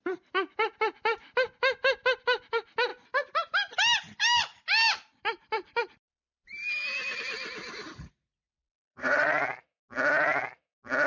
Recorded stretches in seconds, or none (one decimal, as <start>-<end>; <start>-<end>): 0.0-7.8; 9.4-11.1